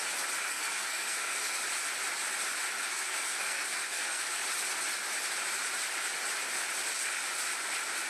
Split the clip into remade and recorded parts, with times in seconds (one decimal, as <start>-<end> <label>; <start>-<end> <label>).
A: 0.0-0.5 recorded; 0.5-1.6 remade; 1.6-2.9 recorded; 2.9-4.4 remade; 4.4-8.1 recorded